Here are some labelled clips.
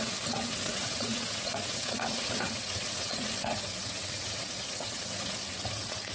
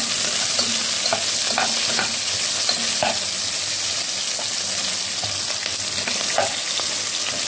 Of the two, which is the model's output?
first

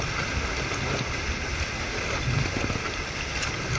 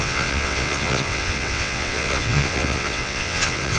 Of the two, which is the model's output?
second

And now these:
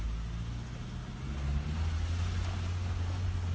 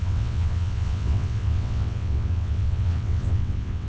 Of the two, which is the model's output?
second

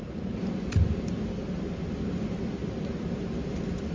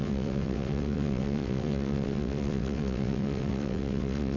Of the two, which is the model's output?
second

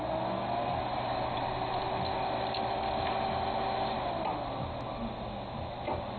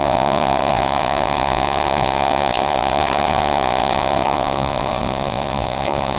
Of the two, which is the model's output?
second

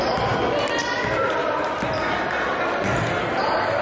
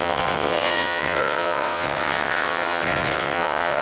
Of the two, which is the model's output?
second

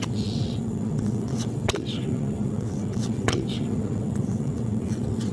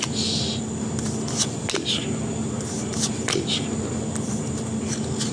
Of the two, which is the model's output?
first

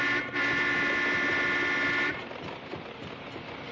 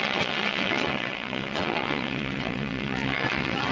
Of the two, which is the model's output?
second